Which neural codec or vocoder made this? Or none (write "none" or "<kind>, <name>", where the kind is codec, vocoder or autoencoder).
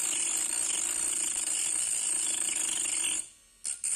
none